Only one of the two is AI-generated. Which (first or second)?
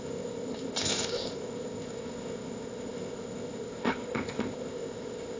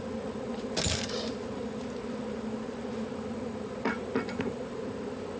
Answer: first